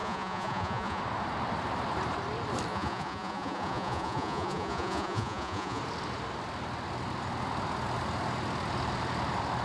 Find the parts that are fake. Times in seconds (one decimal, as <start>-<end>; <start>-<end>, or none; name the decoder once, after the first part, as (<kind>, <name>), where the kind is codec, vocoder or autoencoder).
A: 0.0-1.0 (vocoder, Vocos); 2.7-5.8